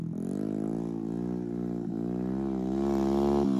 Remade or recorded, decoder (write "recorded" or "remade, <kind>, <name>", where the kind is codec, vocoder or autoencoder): recorded